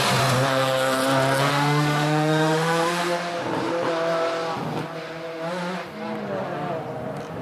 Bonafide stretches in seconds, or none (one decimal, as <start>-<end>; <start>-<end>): 0.0-1.5; 3.0-7.4